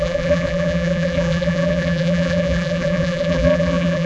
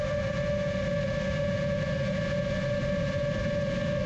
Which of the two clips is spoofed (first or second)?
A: first